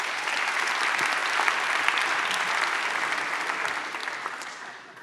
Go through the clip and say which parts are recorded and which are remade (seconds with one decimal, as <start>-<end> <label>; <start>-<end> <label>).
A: 0.0-4.0 recorded; 4.0-5.0 remade